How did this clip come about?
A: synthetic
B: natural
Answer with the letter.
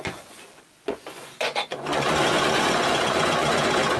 A